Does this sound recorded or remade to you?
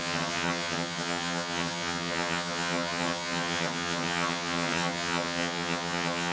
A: remade